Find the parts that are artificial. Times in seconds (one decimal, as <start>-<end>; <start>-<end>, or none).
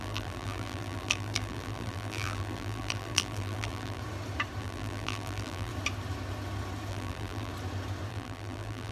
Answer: 0.0-4.0; 4.6-5.7; 6.9-7.5; 8.1-8.9